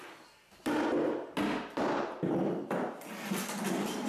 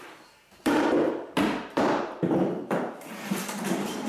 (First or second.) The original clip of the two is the first